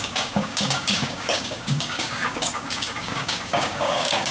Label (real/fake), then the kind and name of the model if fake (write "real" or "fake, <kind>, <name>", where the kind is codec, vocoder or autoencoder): fake, codec, DAC